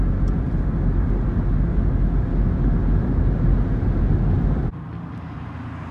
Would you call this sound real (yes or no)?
yes